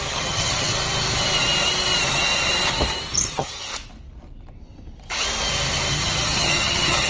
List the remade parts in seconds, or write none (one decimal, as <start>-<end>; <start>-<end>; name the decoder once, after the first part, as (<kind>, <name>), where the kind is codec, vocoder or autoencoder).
0.0-0.7 (vocoder, HiFi-GAN); 3.3-3.7; 5.9-7.1